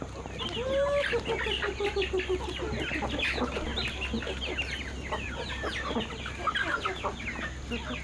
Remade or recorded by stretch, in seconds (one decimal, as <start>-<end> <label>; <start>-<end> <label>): 0.0-8.0 recorded

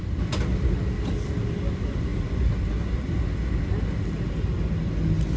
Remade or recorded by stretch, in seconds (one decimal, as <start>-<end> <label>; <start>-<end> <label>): 0.0-5.4 recorded

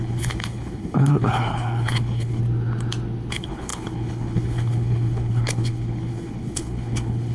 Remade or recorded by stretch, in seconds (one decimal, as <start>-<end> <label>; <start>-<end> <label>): 0.0-2.4 remade; 2.4-3.3 recorded; 3.3-7.3 remade